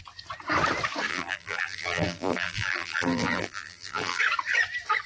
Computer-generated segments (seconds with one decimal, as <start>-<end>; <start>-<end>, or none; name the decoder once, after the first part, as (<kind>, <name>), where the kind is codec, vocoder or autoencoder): 1.1-4.2 (vocoder, BigVGAN v2)